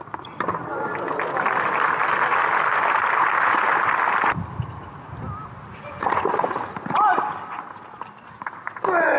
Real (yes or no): yes